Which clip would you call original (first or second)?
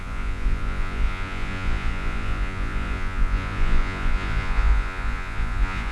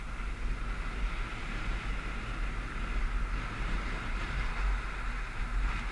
second